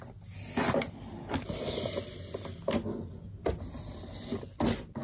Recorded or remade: recorded